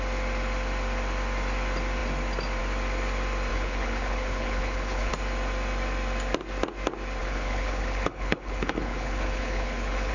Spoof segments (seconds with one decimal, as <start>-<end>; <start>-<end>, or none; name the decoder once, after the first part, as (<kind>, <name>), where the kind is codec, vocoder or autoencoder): 3.5-5.1 (codec, HILCodec); 7.2-10.1